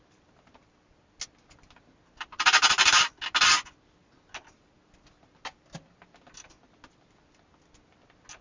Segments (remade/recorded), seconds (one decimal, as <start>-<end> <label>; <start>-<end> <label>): 0.0-8.4 recorded